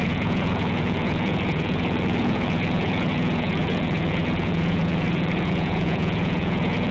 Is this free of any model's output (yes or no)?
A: no